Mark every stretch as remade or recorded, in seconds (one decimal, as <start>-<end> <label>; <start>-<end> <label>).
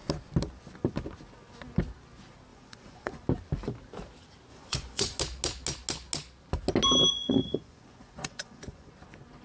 0.0-2.5 recorded; 2.5-3.2 remade; 3.2-4.5 recorded; 4.5-5.2 remade; 5.2-7.1 recorded; 7.1-8.9 remade; 8.9-9.4 recorded